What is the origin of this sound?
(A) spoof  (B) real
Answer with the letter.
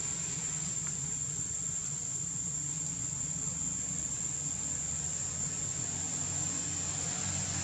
A